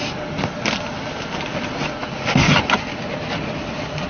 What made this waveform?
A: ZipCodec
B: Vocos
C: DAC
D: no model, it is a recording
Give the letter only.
D